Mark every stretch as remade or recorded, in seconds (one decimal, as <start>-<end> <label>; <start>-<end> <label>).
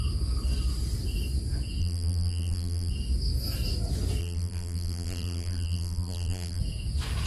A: 0.0-1.8 recorded; 1.8-2.9 remade; 2.9-4.2 recorded; 4.2-6.6 remade; 6.6-7.3 recorded